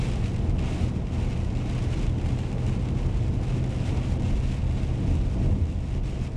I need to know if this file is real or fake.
real